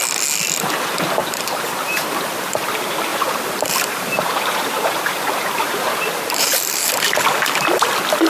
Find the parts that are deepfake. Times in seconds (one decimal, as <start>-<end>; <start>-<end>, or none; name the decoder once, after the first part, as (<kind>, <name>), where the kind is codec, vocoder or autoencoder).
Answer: 1.2-2.1 (vocoder, BigVGAN v2); 3.1-6.9